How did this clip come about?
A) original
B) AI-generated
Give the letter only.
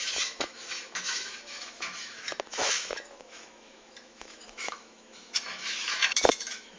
B